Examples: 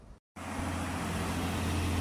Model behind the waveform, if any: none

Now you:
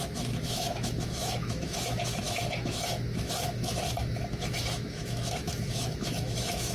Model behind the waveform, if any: autoencoder, DAC-VAE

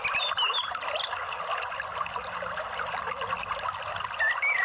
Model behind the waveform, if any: none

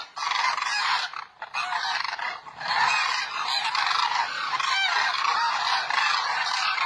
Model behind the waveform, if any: none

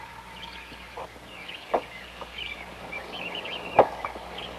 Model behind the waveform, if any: codec, DAC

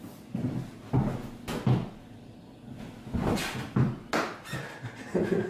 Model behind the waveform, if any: none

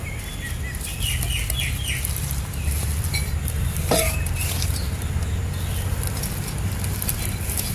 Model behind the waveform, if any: none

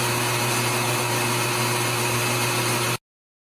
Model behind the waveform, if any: none